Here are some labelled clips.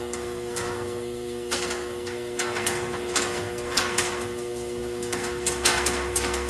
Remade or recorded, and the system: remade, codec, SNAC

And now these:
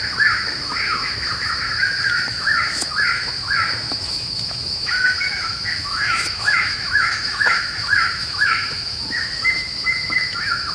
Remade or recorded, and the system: remade, autoencoder, DAC-VAE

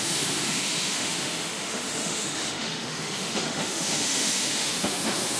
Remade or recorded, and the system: remade, autoencoder, DAC-VAE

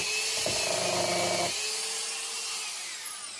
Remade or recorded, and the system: recorded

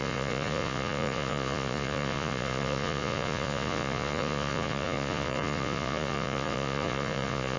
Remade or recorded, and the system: remade, vocoder, Vocos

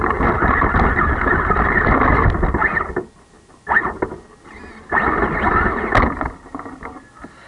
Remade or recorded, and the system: recorded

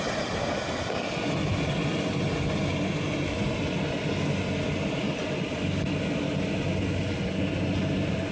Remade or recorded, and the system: recorded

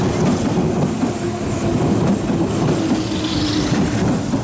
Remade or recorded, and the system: recorded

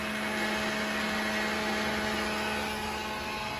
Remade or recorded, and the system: recorded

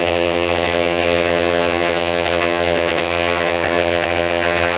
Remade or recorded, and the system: remade, vocoder, HiFi-GAN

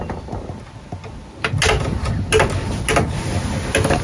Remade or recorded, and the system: recorded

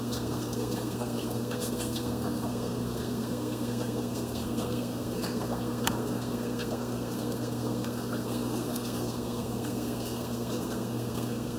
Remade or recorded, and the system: remade, codec, SNAC